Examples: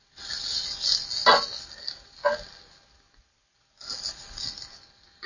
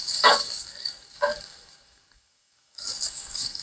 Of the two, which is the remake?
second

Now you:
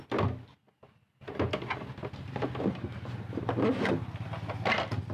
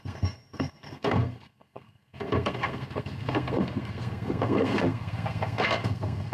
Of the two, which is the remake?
second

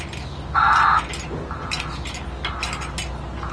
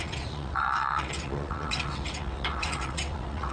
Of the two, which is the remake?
second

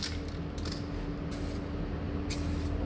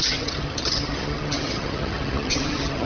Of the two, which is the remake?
second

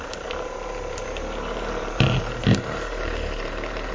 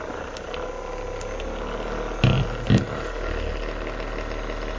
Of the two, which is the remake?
first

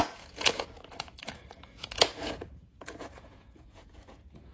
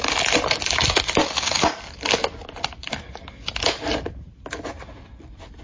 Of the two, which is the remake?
first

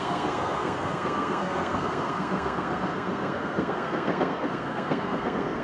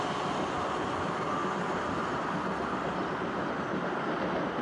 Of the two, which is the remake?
first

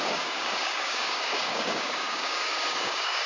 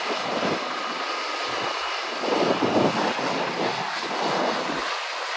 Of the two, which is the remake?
first